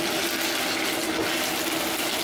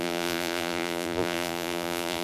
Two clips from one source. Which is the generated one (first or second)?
second